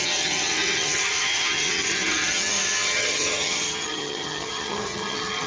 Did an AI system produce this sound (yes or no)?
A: yes